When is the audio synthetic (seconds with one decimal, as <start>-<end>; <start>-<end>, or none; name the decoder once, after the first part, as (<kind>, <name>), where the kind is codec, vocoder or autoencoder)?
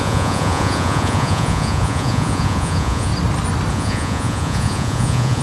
0.0-3.1 (vocoder, Vocos); 3.7-5.4